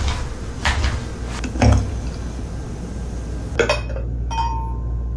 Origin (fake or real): real